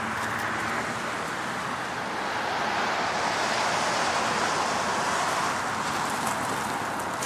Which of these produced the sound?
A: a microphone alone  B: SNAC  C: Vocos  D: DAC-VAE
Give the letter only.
A